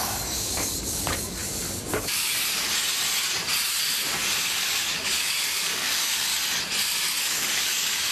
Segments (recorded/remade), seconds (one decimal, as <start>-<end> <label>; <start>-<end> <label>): 0.0-1.4 remade; 1.4-1.9 recorded; 1.9-2.3 remade; 2.3-4.4 recorded; 4.4-6.3 remade; 6.3-7.2 recorded; 7.2-8.1 remade